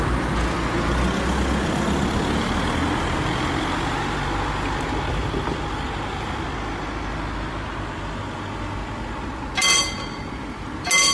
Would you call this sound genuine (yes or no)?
yes